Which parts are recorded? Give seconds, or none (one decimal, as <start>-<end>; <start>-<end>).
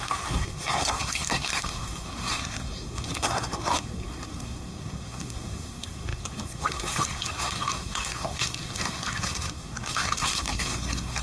none